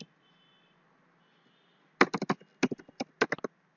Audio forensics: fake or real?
real